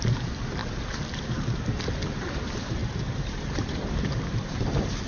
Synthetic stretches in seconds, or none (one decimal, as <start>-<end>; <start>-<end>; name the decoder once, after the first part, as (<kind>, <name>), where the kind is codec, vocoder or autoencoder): 0.0-0.6 (vocoder, BigVGAN v2); 2.3-5.1